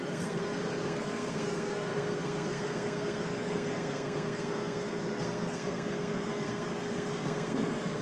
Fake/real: fake